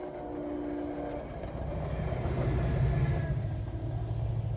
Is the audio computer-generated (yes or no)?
no